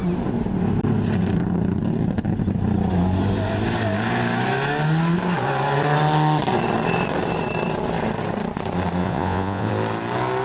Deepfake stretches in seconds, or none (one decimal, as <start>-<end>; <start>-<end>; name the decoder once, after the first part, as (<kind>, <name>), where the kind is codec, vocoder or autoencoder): 9.0-9.7 (vocoder, Vocos)